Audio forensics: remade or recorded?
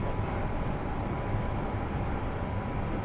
recorded